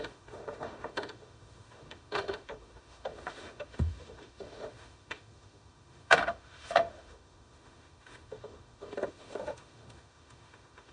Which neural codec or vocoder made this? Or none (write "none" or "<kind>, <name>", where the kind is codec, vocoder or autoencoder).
autoencoder, DAC-VAE